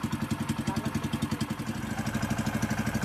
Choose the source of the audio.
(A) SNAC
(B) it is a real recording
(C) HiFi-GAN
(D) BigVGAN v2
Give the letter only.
B